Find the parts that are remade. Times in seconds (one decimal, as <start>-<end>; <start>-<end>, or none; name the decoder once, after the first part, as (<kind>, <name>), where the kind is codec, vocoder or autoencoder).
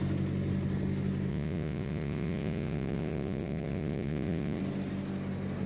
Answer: 1.3-4.6 (vocoder, Vocos)